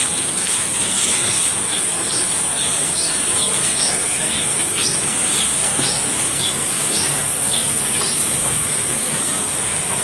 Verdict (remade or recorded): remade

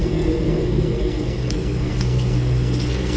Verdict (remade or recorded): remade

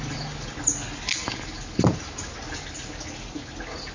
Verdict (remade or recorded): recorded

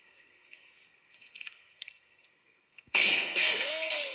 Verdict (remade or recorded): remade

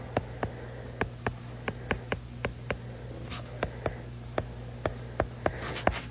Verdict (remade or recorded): recorded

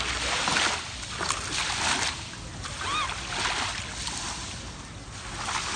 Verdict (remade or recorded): recorded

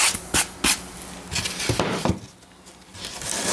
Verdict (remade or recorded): recorded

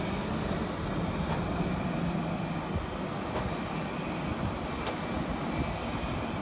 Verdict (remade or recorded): recorded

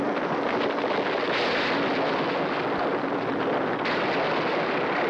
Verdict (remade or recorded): recorded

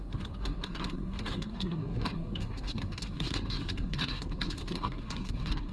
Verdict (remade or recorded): remade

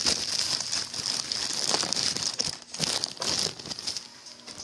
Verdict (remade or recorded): recorded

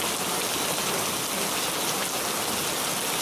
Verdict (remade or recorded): recorded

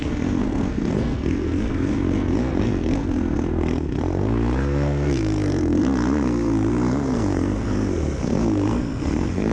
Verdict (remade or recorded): remade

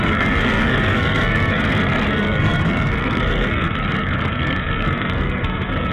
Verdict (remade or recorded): remade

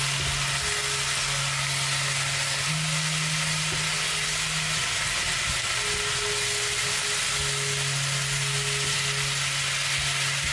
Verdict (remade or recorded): recorded